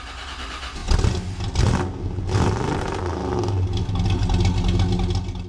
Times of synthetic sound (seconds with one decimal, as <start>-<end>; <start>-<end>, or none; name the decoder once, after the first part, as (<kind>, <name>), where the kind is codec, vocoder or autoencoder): none